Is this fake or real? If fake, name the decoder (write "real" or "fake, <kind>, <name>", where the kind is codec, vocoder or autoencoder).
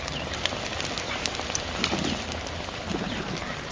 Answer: fake, vocoder, BigVGAN v2